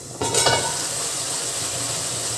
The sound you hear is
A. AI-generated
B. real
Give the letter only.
A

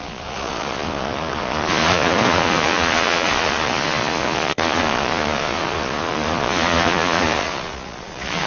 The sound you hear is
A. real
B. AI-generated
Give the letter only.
B